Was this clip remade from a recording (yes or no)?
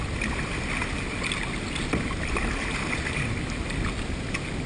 no